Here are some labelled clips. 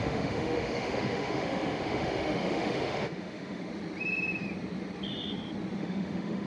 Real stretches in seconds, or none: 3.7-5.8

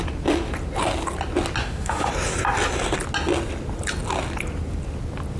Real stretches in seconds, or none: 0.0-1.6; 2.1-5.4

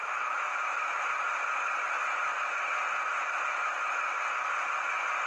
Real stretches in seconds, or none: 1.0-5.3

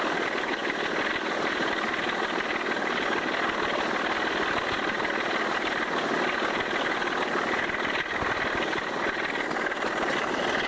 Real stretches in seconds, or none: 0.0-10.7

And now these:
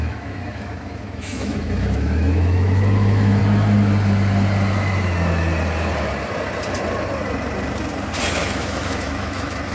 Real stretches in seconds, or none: 3.4-8.3

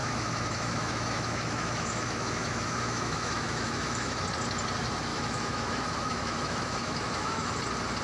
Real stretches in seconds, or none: 4.2-5.1; 7.5-8.0